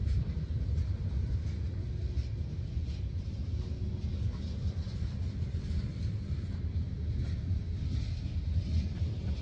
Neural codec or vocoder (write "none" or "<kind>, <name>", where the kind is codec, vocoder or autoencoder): none